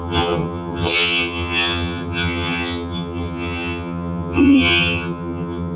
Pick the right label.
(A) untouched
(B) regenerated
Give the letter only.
B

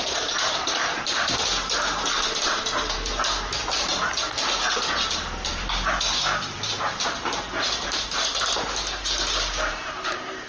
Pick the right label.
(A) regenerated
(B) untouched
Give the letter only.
A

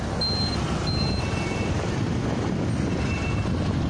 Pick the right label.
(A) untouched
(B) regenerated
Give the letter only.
A